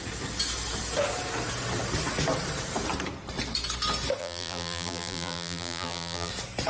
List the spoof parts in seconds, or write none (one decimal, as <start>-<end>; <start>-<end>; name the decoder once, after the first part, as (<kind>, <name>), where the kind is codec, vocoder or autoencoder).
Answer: 4.2-6.3 (vocoder, BigVGAN v2)